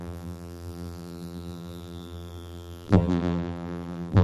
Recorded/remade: remade